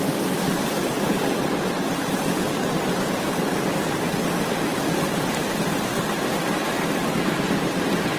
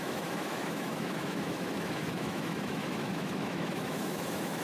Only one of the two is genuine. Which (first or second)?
first